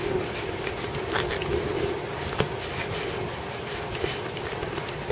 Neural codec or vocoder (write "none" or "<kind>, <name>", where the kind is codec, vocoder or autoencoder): none